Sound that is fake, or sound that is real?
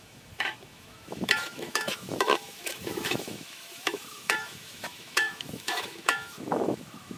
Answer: fake